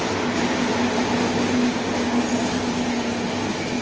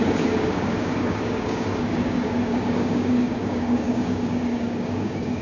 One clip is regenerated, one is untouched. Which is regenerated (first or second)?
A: second